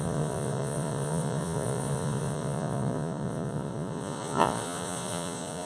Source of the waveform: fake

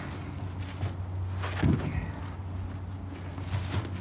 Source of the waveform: real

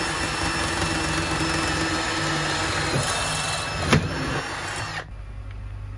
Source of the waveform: real